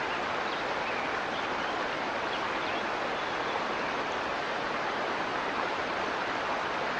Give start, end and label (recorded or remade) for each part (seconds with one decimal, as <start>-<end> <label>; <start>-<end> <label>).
0.0-4.3 recorded; 4.3-5.9 remade; 5.9-7.0 recorded